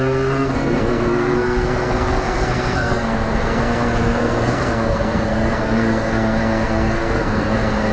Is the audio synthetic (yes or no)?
yes